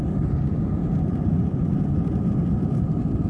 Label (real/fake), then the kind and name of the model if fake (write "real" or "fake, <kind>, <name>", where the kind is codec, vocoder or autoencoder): real